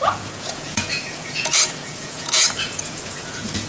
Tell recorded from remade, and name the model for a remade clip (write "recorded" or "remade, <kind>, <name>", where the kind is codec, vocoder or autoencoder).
remade, vocoder, Vocos